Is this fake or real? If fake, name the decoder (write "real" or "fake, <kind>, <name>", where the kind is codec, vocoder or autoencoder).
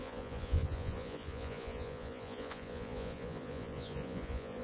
fake, vocoder, Vocos